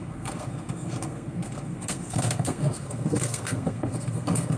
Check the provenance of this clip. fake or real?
fake